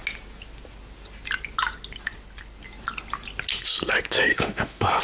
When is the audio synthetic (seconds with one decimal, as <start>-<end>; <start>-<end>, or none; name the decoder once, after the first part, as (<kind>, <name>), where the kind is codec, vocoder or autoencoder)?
4.3-5.0 (autoencoder, DAC-VAE)

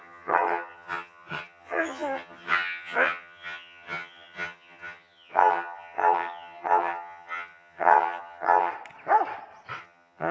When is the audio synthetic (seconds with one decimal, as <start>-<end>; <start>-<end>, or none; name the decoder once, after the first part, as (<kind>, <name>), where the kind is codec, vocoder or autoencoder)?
0.0-8.7 (vocoder, HiFi-GAN); 9.8-10.3

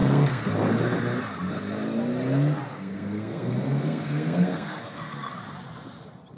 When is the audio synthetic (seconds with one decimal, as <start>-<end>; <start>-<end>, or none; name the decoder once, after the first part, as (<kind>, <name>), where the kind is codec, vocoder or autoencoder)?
0.0-0.5 (codec, SNAC); 2.7-5.3

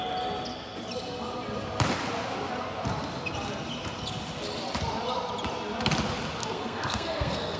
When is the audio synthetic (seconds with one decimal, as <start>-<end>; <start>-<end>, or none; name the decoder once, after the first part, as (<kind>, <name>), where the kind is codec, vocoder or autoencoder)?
6.4-7.6 (codec, SNAC)